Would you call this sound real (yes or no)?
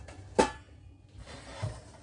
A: yes